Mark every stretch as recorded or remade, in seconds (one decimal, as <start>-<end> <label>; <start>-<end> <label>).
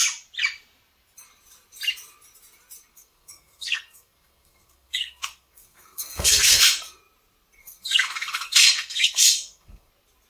0.0-2.9 recorded; 2.9-7.0 remade; 7.0-7.6 recorded; 7.6-9.9 remade; 9.9-10.3 recorded